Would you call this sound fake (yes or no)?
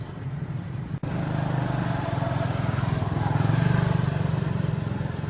no